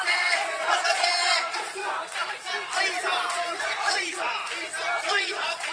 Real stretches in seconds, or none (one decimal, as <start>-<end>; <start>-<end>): 1.8-3.6; 4.4-5.0